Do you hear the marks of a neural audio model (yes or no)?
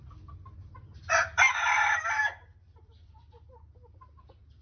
no